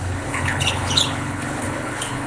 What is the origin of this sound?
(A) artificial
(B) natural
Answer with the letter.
A